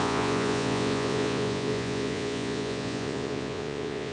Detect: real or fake fake